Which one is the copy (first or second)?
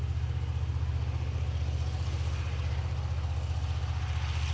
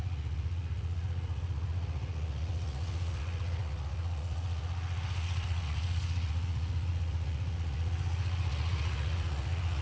second